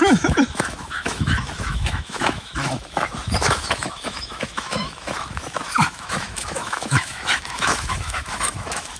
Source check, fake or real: fake